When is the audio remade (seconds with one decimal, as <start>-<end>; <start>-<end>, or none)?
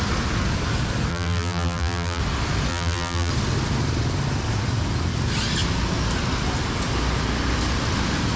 1.1-2.2; 2.7-3.3